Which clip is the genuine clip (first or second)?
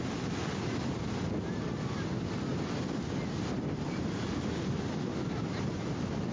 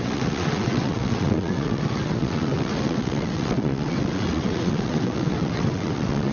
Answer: first